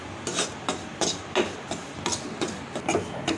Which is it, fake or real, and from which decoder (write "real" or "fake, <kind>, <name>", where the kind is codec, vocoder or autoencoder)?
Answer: real